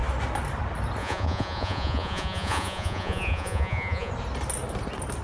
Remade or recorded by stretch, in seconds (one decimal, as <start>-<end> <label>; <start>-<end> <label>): 0.0-1.0 recorded; 1.0-4.1 remade; 4.1-5.2 recorded